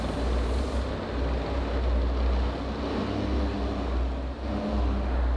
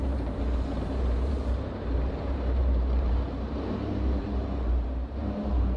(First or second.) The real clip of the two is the first